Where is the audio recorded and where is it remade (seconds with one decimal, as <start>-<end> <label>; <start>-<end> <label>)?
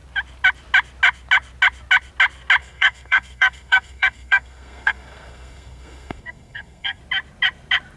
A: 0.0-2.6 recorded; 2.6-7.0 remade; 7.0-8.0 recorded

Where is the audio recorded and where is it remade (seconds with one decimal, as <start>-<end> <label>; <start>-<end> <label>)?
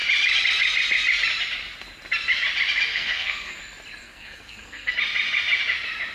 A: 0.0-2.9 recorded; 2.9-3.6 remade; 3.6-4.0 recorded; 4.0-4.9 remade; 4.9-6.1 recorded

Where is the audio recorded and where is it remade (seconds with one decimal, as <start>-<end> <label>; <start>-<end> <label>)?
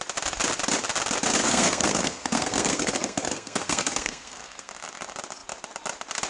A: 0.0-1.4 recorded; 1.4-4.7 remade; 4.7-6.3 recorded